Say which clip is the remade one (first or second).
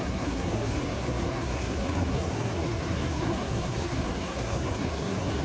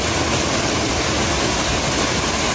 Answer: first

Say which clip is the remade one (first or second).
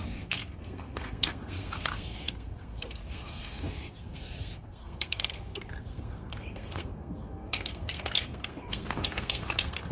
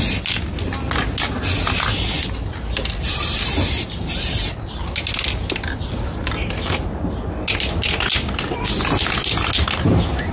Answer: first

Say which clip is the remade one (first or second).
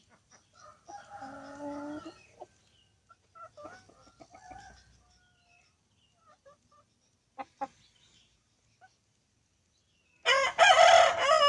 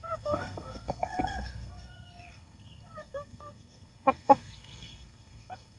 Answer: second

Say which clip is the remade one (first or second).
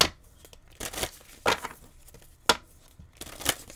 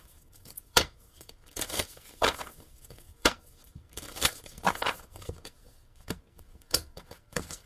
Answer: second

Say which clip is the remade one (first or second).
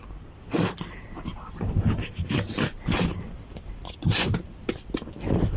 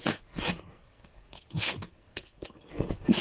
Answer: second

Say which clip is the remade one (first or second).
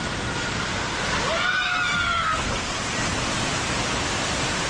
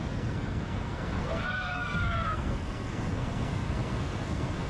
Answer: second